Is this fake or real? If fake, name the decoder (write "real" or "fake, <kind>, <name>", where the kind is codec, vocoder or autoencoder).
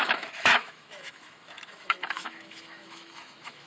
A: fake, autoencoder, DAC-VAE